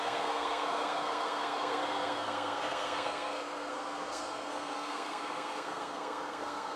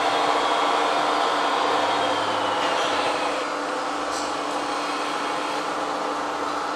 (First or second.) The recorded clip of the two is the second